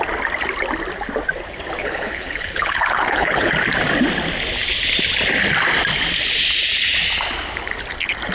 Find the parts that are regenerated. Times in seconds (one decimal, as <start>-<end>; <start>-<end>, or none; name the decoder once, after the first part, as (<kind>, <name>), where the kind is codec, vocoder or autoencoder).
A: 1.8-3.5 (codec, HILCodec)